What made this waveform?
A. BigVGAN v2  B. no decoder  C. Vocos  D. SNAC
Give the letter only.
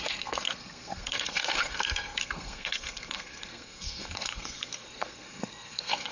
D